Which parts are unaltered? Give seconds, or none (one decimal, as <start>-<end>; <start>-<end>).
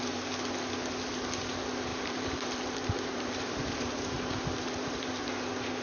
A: 0.0-1.9; 5.1-5.8